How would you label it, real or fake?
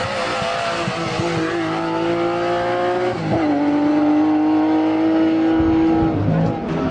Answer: real